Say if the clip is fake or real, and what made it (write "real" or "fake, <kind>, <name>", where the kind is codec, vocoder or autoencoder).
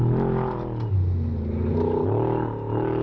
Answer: real